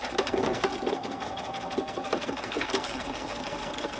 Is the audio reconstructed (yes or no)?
yes